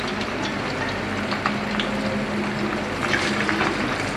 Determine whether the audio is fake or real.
real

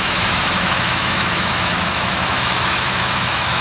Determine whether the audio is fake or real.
fake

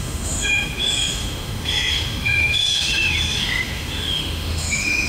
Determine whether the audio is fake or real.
fake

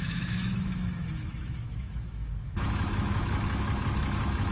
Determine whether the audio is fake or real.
fake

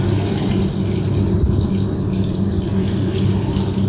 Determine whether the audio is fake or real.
real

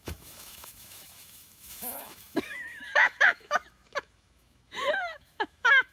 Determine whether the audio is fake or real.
fake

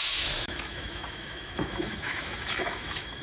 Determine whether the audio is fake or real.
fake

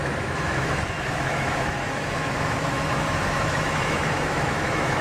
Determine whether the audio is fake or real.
fake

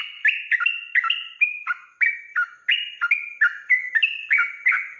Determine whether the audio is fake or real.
real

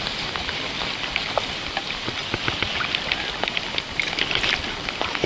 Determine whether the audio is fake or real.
real